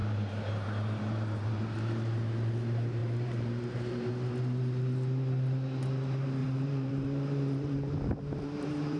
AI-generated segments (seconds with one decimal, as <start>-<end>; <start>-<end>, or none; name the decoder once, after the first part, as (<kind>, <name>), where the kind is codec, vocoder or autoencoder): 0.0-1.6 (vocoder, BigVGAN v2); 3.0-4.1; 6.4-9.0